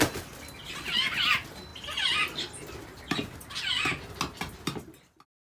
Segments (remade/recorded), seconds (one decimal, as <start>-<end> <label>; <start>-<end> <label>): 0.0-5.5 recorded